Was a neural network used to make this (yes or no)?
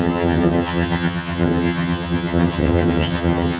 yes